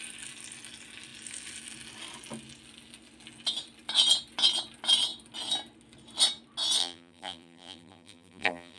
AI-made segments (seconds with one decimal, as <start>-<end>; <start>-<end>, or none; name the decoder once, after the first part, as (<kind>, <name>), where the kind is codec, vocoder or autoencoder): 6.8-8.8 (vocoder, BigVGAN v2)

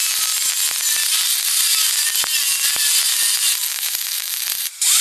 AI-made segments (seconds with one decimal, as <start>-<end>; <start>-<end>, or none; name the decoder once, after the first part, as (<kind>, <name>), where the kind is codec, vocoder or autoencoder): 3.7-5.0 (vocoder, BigVGAN v2)

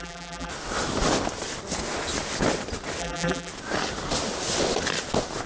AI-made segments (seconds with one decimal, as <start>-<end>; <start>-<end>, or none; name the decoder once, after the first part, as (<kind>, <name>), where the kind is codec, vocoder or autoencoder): 0.0-0.5 (vocoder, BigVGAN v2); 3.0-3.5

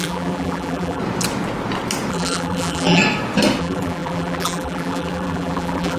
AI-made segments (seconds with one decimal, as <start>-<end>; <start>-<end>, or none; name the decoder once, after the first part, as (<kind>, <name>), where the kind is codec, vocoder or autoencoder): 0.0-1.0 (vocoder, BigVGAN v2); 2.1-3.0; 3.6-6.0

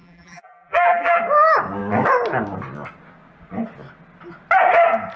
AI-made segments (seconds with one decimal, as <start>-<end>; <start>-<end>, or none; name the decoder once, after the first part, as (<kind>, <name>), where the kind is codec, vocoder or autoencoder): 0.0-1.2 (vocoder, BigVGAN v2)

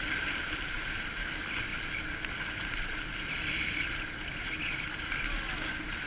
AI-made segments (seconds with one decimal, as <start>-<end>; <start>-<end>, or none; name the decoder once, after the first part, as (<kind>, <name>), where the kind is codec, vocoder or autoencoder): 0.0-1.1 (vocoder, BigVGAN v2); 1.7-4.1